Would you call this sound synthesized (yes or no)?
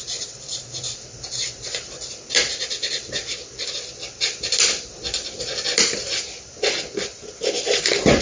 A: yes